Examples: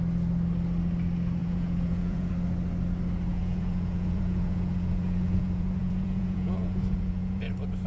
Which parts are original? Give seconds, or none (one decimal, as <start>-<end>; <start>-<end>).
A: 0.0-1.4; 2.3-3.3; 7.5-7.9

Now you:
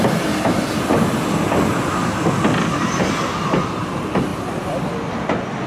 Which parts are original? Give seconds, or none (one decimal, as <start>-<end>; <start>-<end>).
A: 0.0-5.7

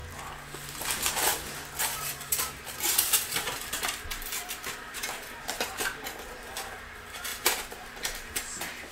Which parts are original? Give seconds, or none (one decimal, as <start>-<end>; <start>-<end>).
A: 0.0-0.7; 1.3-1.8

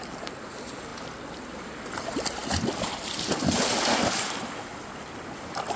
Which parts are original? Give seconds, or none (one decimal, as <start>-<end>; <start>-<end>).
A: 0.0-5.8

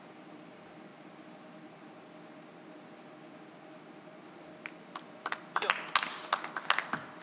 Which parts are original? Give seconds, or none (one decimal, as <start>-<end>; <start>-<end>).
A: 0.0-7.2

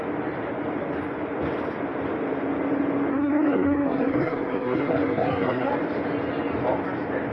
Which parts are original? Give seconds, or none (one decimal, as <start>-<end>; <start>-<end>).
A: 0.0-3.1; 5.7-7.3

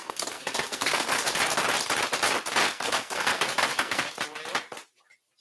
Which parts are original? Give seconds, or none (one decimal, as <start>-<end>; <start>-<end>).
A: 1.4-2.6; 4.1-5.4